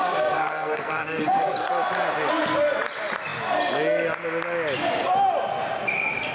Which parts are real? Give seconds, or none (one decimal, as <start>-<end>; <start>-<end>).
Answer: 1.7-6.3